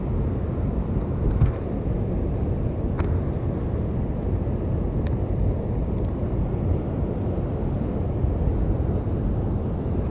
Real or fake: real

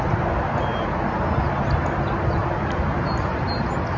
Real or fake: real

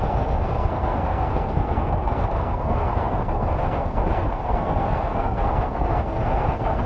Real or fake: fake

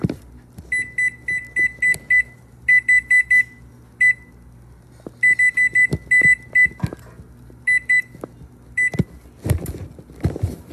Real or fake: real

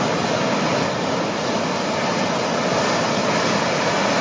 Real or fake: real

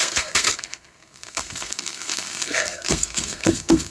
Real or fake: fake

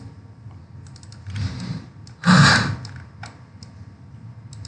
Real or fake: real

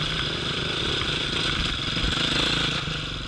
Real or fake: real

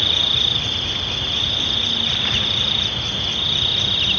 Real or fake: real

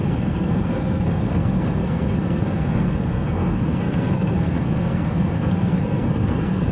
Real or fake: fake